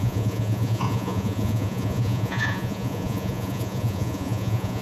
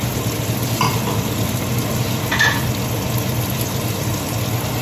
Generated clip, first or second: first